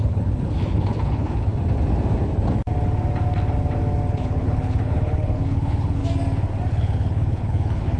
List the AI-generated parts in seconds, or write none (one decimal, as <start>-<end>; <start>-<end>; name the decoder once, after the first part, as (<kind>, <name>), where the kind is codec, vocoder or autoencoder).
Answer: 0.0-1.5 (codec, HILCodec); 4.1-6.0; 6.7-8.0